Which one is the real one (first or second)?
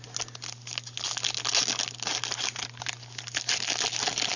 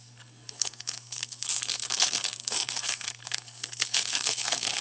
first